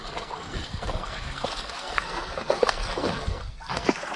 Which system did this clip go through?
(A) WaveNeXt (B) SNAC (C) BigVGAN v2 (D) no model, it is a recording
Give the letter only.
B